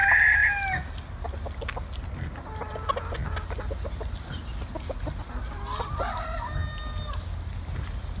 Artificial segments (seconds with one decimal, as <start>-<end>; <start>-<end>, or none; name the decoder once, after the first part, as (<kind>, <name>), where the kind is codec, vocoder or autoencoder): none